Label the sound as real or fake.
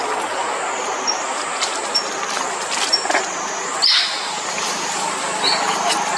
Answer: real